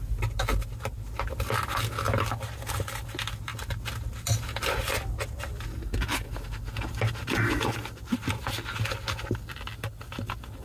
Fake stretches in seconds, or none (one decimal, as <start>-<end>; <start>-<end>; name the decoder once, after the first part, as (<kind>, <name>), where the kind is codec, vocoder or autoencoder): none